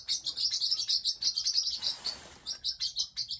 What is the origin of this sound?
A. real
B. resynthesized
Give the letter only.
A